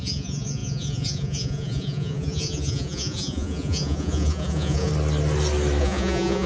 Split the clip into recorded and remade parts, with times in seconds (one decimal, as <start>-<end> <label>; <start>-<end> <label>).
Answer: 0.0-4.9 remade; 4.9-5.8 recorded; 5.8-6.5 remade